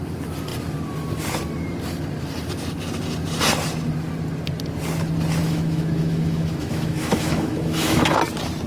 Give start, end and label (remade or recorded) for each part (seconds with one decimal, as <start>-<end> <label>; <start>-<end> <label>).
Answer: 0.0-5.4 recorded; 5.4-8.2 remade; 8.2-8.7 recorded